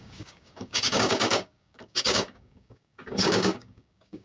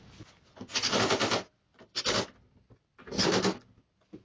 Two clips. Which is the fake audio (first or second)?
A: first